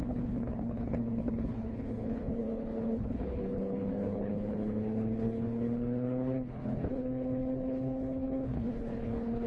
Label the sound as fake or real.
fake